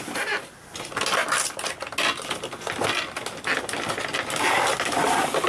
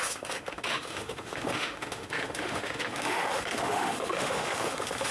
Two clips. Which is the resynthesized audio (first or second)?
second